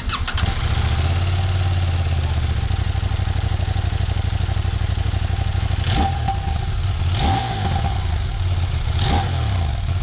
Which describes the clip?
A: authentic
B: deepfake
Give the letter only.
A